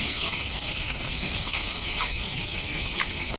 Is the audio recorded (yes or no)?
no